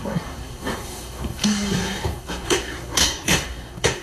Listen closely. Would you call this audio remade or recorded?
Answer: remade